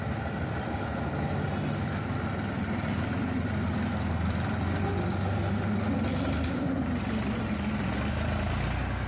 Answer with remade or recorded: recorded